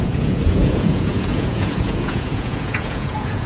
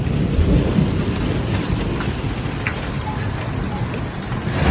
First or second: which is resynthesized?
first